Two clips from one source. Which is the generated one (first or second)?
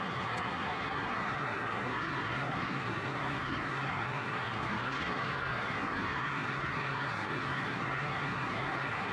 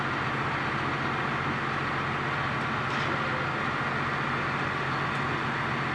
first